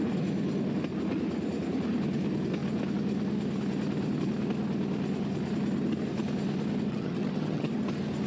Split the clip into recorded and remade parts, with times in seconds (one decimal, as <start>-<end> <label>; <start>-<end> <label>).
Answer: 0.0-6.9 recorded; 6.9-7.7 remade; 7.7-8.3 recorded